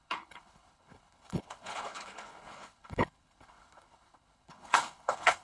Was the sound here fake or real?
fake